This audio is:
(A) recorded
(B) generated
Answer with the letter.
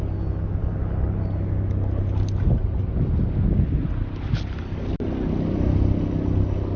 A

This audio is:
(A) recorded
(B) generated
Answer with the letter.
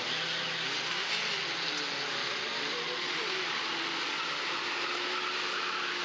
A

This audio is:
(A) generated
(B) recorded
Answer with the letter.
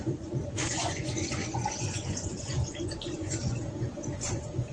A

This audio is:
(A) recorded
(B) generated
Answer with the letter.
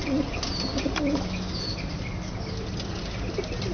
A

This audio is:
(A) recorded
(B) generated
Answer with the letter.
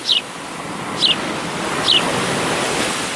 A